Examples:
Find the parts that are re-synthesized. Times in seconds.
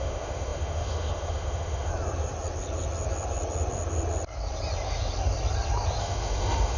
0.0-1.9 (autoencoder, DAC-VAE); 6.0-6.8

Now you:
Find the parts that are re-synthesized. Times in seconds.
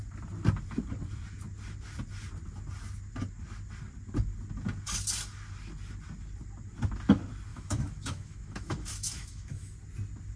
7.5-9.7 (autoencoder, DAC-VAE)